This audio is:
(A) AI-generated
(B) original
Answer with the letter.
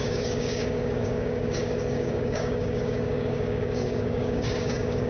A